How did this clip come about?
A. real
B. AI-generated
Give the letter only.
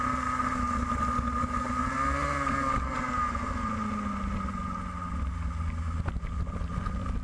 A